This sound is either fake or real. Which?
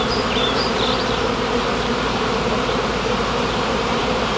fake